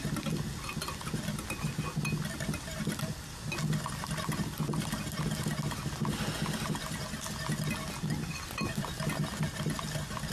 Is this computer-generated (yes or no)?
no